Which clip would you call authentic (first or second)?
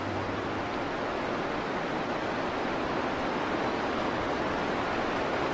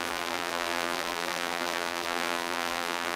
first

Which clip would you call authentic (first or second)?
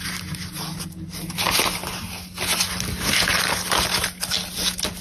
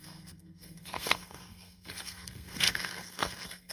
first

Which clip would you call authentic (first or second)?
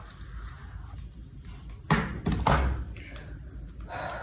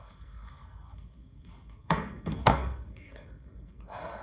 first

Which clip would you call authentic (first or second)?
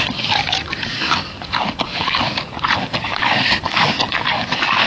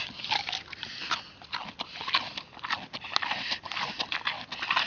second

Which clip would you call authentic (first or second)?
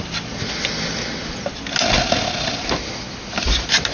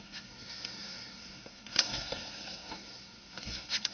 first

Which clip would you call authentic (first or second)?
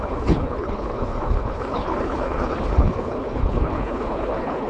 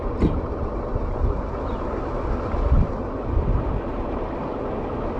second